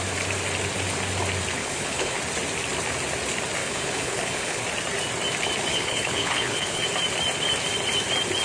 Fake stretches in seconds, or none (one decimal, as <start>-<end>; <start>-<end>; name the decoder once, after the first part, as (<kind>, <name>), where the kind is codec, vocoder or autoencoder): 1.6-2.2 (codec, HILCodec); 3.6-4.6; 5.7-6.8